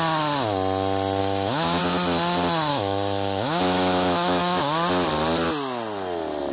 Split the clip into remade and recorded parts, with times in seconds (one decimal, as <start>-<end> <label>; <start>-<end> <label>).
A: 0.0-1.2 recorded; 1.2-1.8 remade; 1.8-2.7 recorded; 2.7-4.6 remade; 4.6-6.5 recorded